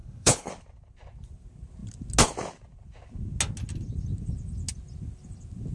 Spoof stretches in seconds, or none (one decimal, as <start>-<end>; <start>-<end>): 0.0-0.5